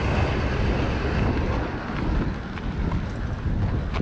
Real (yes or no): yes